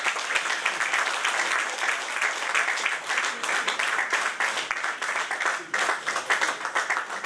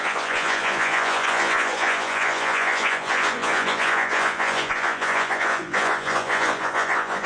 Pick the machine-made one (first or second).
second